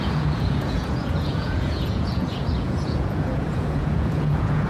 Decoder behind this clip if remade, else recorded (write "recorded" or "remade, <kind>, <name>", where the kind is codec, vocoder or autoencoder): remade, vocoder, Vocos